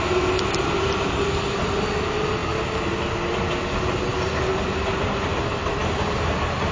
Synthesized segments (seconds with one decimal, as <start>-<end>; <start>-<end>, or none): none